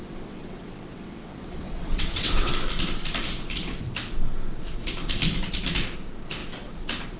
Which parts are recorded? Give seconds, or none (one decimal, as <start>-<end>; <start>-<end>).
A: 2.5-7.2